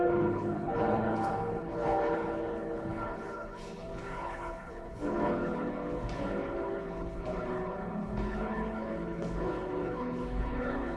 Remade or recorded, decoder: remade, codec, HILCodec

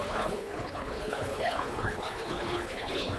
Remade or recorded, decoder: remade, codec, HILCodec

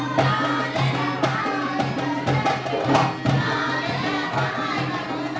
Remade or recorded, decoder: recorded